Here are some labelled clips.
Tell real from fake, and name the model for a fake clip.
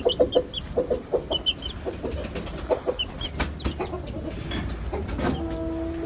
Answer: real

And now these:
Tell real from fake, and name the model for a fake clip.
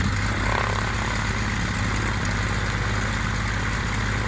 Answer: real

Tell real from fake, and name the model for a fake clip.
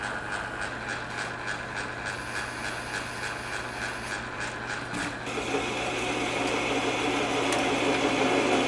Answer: real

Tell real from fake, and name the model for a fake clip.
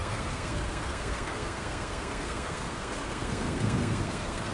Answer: fake, codec, SNAC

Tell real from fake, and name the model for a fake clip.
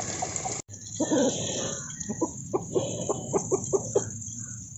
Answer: fake, vocoder, BigVGAN v2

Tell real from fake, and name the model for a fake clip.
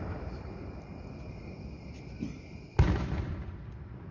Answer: real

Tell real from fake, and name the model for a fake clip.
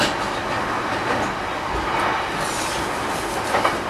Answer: real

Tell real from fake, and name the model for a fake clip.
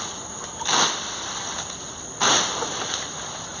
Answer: real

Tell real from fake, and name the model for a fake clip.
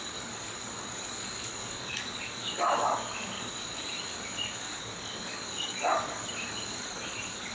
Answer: fake, codec, DAC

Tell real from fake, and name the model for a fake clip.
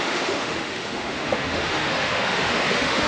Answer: fake, autoencoder, DAC-VAE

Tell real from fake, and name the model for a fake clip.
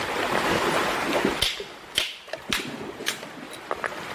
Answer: real